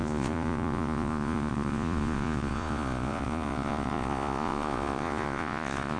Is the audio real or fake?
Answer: fake